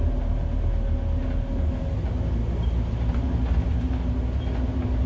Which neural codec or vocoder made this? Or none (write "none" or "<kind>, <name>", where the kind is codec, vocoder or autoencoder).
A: none